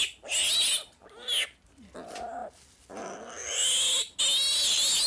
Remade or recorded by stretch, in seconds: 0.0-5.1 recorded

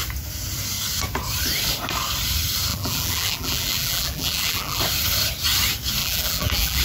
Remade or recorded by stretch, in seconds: 0.0-2.7 recorded; 2.7-4.8 remade; 4.8-6.0 recorded; 6.0-6.8 remade

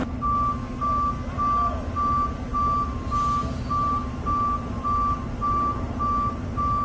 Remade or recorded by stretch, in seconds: 0.0-6.8 recorded